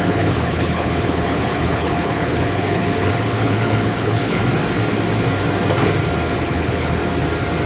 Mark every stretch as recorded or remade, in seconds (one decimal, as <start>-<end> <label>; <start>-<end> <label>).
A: 0.0-4.4 remade; 4.4-6.4 recorded; 6.4-7.0 remade; 7.0-7.7 recorded